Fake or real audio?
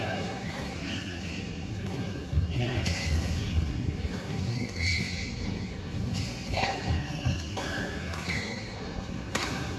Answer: fake